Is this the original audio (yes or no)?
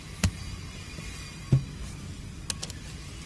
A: yes